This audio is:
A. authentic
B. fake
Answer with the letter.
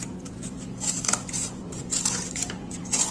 B